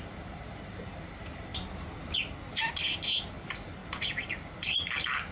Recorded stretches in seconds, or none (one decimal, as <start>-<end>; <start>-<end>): 1.5-3.3